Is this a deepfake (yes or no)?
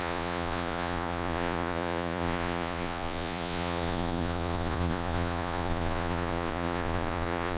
yes